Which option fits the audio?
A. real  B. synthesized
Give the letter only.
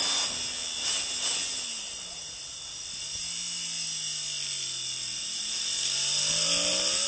A